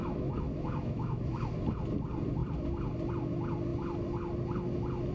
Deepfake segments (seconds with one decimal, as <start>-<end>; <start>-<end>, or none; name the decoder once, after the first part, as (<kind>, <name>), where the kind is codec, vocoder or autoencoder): 0.0-1.2 (autoencoder, DAC-VAE)